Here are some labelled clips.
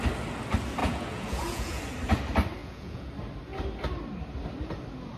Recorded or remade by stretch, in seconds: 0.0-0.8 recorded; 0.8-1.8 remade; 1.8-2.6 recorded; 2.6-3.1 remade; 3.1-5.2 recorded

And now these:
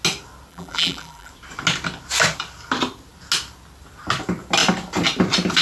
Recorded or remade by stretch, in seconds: 0.0-0.5 recorded; 0.5-1.3 remade; 1.3-5.6 recorded